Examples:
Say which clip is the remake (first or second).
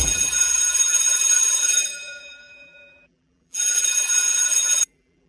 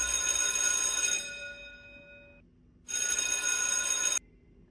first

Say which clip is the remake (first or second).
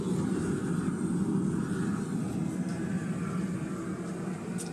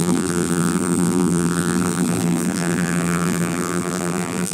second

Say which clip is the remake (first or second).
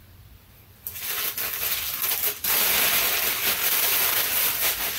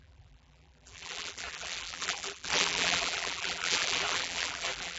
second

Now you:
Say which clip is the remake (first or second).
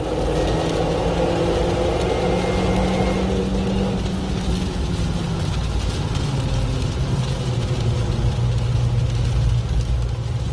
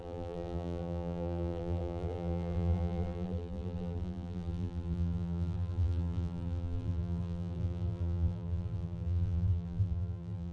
second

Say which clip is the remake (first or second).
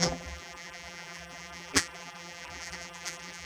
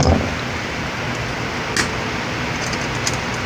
first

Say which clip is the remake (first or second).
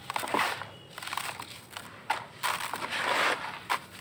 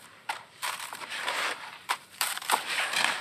second